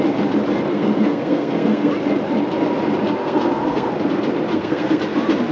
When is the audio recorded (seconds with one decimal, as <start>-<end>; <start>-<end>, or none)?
0.0-0.7; 1.9-3.2; 3.9-4.5; 5.0-5.5